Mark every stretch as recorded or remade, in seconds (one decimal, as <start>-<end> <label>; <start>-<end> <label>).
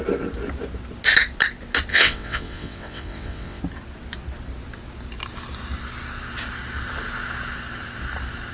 0.0-1.9 recorded; 1.9-3.6 remade; 3.6-8.5 recorded